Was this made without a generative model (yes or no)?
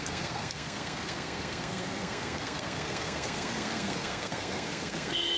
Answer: no